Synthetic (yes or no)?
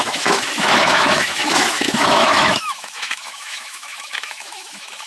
yes